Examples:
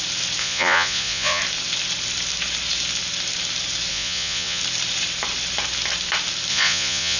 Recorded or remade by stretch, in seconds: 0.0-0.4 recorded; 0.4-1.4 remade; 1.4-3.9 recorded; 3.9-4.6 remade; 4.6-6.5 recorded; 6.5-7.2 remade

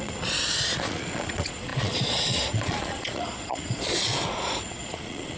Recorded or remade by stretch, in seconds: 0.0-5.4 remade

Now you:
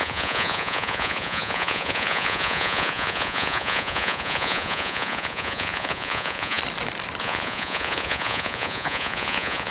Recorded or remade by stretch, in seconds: 0.0-6.6 remade; 6.6-7.2 recorded; 7.2-9.7 remade